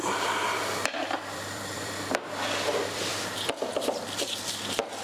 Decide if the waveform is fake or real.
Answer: fake